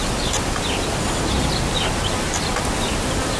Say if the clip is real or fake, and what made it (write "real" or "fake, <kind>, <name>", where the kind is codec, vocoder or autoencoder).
real